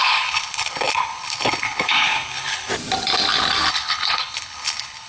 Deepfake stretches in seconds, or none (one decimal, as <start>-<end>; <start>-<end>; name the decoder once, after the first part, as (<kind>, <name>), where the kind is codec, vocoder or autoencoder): 0.0-2.7 (codec, HILCodec); 3.7-5.1